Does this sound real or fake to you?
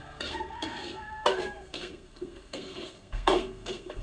fake